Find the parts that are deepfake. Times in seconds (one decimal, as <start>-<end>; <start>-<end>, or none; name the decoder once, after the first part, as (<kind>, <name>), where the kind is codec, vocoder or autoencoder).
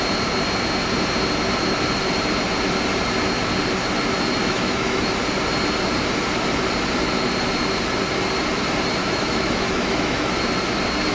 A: 4.4-5.1 (autoencoder, DAC-VAE); 9.0-10.3